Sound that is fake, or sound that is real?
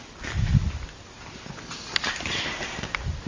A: real